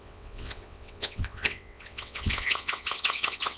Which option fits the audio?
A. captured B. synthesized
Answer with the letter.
B